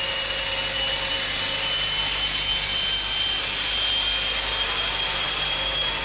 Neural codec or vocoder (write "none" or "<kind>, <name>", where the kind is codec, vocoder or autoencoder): none